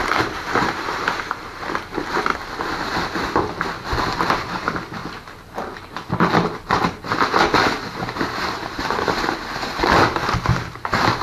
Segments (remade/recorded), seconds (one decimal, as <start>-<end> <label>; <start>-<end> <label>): 0.0-2.3 remade; 2.3-4.2 recorded; 4.2-5.0 remade; 5.0-7.0 recorded; 7.0-11.2 remade